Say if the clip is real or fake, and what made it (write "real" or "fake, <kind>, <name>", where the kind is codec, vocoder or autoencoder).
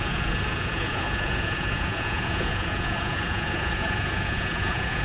fake, vocoder, Vocos